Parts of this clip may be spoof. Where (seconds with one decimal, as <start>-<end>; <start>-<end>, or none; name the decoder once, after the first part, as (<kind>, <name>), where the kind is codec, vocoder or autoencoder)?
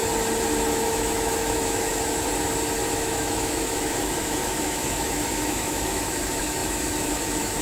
0.7-1.9 (autoencoder, DAC-VAE); 2.9-7.6